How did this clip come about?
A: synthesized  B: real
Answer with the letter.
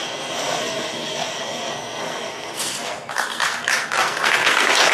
A